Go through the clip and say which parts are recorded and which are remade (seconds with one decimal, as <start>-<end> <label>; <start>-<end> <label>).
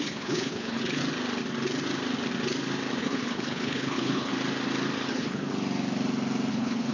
0.0-1.0 remade; 1.0-3.0 recorded; 3.0-4.3 remade; 4.3-5.1 recorded; 5.1-5.5 remade; 5.5-6.5 recorded; 6.5-6.9 remade